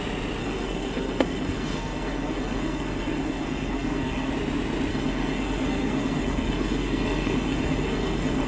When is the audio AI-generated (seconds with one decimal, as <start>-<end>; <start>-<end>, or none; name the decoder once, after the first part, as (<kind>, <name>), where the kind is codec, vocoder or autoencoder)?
0.4-4.3 (codec, SNAC); 4.9-8.5